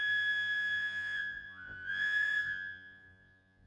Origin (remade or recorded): remade